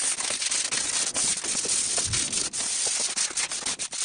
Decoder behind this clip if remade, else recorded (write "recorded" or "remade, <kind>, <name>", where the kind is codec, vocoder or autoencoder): recorded